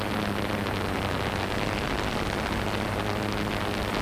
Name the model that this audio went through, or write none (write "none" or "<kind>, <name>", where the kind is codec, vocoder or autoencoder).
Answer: none